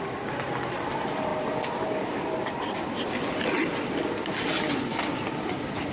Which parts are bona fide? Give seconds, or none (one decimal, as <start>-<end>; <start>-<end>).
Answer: 0.0-5.9